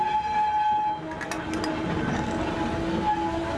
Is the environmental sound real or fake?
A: real